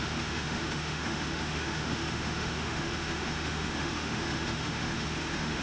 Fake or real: fake